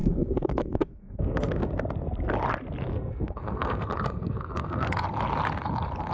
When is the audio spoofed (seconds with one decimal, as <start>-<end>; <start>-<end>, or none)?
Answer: 0.0-1.7; 2.9-5.0